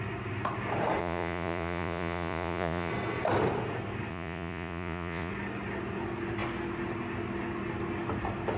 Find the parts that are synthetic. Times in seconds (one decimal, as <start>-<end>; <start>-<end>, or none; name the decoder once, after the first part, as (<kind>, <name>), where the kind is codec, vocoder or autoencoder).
1.0-2.9 (vocoder, Vocos); 4.1-5.3